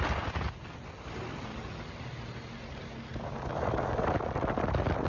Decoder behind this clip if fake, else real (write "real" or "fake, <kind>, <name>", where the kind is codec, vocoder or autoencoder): real